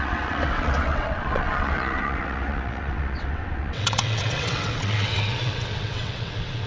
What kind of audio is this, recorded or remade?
remade